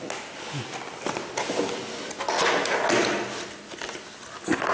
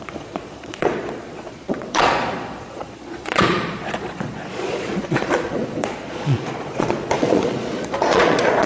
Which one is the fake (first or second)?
second